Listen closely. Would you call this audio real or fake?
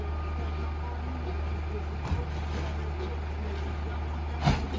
real